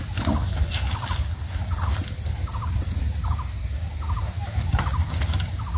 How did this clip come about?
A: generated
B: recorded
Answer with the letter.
B